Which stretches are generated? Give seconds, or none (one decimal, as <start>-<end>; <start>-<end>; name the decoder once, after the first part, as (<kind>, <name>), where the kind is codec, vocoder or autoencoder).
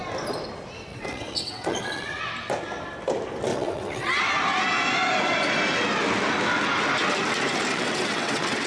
0.9-2.2 (vocoder, WaveNeXt); 3.5-4.2; 7.7-8.7